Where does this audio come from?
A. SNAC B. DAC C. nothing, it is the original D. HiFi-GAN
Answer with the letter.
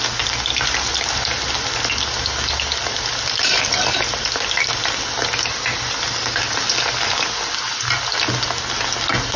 C